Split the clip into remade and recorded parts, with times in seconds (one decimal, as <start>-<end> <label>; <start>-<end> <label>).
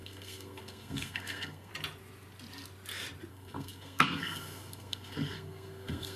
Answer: 0.0-1.7 remade; 1.7-3.3 recorded; 3.3-6.2 remade